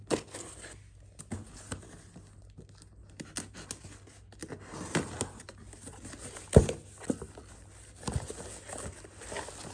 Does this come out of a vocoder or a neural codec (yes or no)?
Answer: no